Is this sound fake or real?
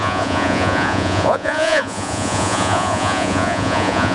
fake